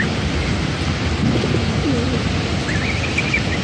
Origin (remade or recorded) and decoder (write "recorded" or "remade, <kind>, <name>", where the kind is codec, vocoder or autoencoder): recorded